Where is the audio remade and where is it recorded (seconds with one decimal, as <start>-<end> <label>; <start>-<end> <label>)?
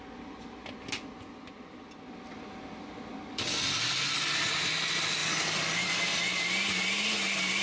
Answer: 0.0-7.6 recorded